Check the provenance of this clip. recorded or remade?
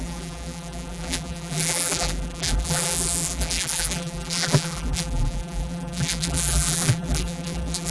remade